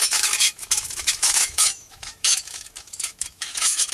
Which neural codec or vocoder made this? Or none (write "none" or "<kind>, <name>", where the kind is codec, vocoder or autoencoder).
autoencoder, DAC-VAE